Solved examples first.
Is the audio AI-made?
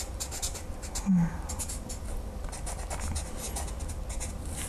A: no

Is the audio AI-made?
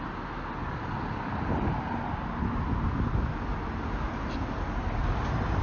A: no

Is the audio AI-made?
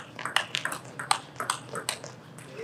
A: no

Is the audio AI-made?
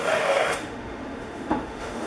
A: yes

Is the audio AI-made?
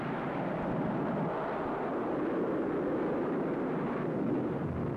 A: no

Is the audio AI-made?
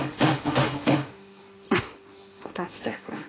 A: yes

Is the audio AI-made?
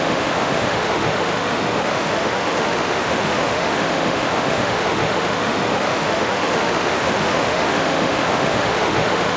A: yes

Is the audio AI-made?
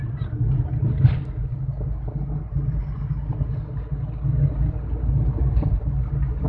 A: no